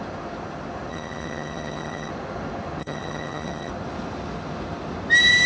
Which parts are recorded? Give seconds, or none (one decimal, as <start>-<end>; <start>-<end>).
0.0-0.9; 2.1-2.8; 3.7-5.5